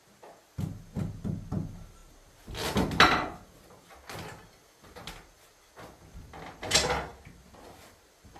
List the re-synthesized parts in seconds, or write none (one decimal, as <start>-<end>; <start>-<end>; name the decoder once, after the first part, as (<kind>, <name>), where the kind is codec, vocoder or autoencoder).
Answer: none